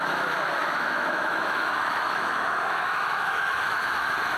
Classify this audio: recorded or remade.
remade